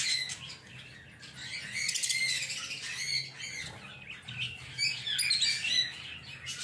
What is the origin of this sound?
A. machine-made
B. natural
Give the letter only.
B